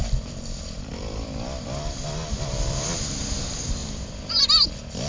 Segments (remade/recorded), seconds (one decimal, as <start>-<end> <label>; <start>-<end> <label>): 0.0-5.1 recorded